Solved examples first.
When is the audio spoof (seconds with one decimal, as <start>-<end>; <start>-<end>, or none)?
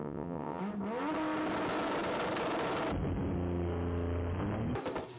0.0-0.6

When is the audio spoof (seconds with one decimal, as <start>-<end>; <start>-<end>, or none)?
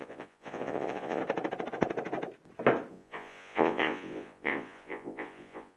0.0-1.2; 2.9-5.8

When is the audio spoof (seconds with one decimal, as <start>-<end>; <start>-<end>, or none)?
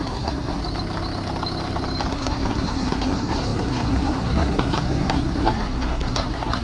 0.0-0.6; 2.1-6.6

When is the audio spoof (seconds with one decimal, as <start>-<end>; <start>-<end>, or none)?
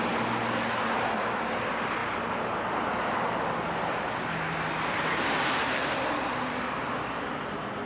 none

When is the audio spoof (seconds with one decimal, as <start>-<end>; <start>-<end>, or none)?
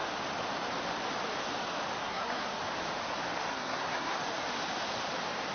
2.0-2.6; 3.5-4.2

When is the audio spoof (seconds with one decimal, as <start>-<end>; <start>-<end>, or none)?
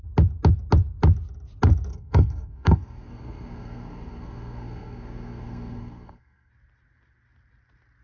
1.9-6.5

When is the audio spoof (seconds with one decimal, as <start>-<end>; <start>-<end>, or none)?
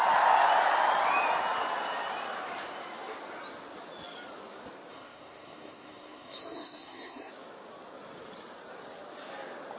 4.9-7.3